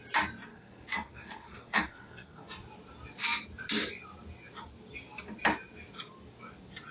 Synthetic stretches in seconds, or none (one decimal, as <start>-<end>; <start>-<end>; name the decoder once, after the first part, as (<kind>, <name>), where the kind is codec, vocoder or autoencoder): 0.5-2.5 (codec, SNAC)